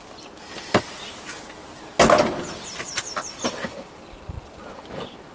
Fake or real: real